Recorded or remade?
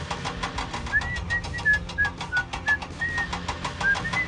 recorded